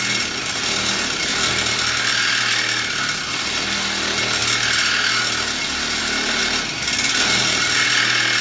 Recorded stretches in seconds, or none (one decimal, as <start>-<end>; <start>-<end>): 0.0-8.4